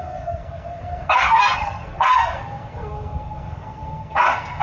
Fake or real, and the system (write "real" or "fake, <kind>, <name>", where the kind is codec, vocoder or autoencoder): fake, codec, SNAC